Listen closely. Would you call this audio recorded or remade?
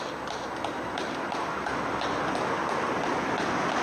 recorded